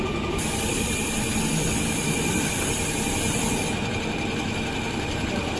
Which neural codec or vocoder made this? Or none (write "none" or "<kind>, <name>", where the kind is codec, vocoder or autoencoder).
vocoder, BigVGAN v2